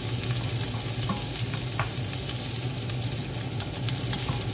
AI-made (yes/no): no